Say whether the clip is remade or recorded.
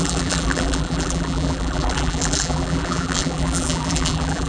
remade